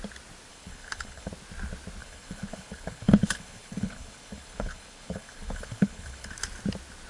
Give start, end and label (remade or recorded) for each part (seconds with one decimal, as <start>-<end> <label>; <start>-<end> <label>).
0.0-0.5 recorded; 0.5-1.3 remade; 1.3-2.0 recorded; 2.0-6.3 remade; 6.3-7.1 recorded